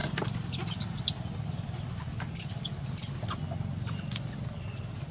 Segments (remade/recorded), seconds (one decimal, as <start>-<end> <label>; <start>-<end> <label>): 0.0-5.1 recorded